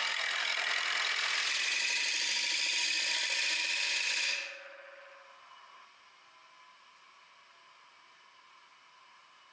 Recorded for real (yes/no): yes